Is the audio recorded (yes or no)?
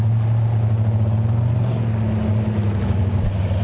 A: yes